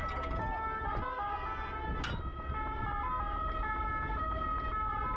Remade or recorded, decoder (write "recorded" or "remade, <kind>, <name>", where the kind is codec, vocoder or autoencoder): recorded